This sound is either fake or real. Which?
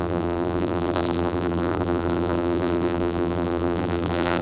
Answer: fake